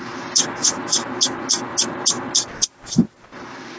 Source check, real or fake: real